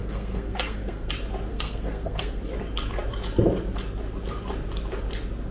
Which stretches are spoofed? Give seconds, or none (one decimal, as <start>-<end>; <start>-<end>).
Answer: 0.0-1.1; 1.5-2.4